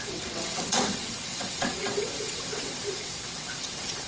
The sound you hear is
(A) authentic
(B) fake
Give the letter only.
B